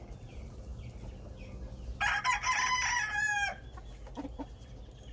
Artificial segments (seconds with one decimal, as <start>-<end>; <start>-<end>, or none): none